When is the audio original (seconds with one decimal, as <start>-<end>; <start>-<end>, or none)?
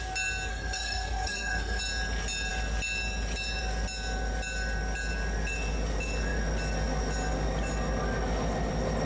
0.0-0.5; 1.8-9.1